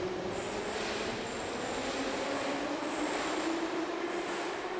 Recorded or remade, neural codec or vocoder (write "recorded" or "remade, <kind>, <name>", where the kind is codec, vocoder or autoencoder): recorded